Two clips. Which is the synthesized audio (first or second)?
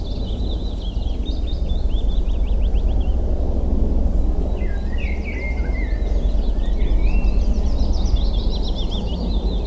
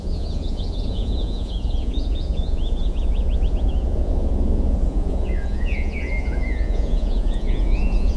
second